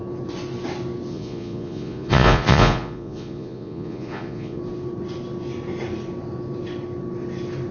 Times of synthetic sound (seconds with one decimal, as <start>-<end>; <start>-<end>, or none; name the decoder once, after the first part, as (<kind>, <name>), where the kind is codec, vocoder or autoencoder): 1.1-4.6 (vocoder, Vocos)